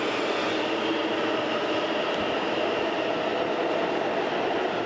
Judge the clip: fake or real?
real